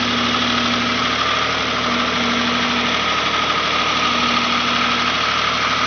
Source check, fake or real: real